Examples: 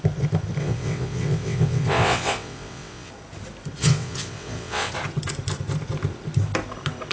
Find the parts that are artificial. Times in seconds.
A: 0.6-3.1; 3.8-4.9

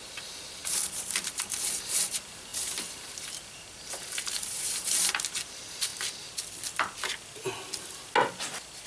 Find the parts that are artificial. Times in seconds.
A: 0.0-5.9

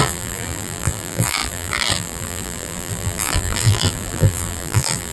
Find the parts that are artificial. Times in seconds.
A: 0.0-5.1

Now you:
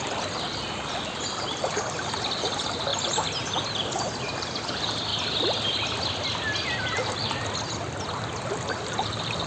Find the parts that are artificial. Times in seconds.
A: 0.0-2.9; 3.6-5.1; 8.4-9.5

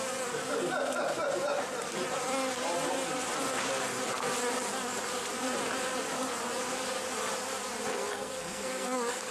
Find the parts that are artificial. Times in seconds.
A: 7.9-9.3